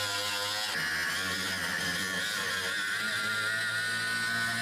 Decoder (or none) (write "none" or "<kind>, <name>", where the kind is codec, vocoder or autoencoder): none